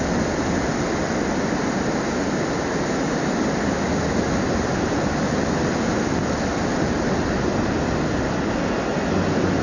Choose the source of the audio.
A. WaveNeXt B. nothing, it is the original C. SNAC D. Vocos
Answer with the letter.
B